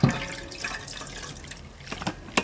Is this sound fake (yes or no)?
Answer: no